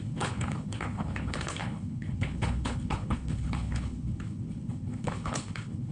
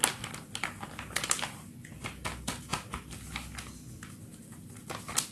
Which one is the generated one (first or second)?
first